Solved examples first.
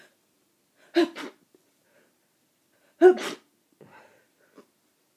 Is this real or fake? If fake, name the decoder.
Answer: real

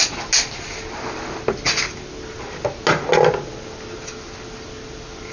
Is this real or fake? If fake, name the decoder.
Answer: real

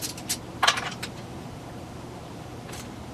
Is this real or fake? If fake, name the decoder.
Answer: fake, vocoder, BigVGAN v2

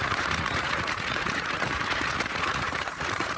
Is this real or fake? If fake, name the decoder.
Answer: fake, vocoder, Vocos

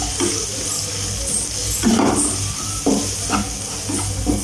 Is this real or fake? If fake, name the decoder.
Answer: real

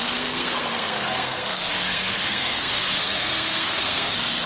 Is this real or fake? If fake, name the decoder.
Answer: fake, codec, SNAC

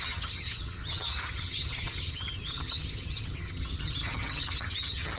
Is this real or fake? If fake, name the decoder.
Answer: fake, vocoder, HiFi-GAN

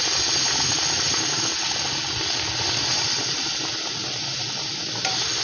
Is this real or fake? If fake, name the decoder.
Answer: real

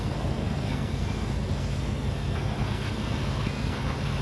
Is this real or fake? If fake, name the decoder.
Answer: fake, codec, SNAC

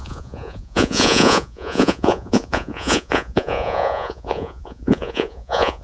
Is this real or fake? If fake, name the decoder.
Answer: fake, vocoder, Vocos